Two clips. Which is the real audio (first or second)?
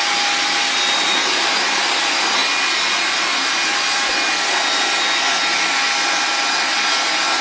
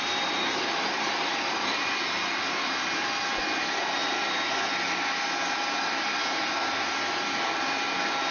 first